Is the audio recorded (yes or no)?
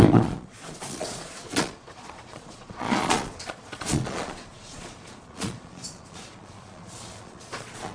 no